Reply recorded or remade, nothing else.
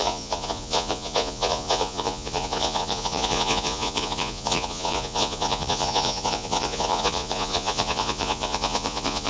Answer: remade